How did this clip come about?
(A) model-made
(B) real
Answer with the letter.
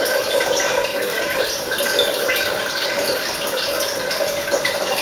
A